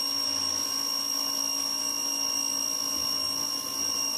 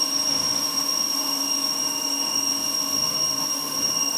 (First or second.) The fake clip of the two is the second